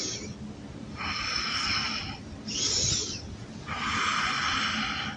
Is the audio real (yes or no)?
yes